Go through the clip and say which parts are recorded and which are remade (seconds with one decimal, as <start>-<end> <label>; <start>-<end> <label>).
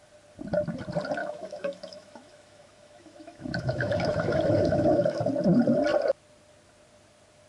0.0-1.2 recorded; 1.2-5.2 remade; 5.2-7.5 recorded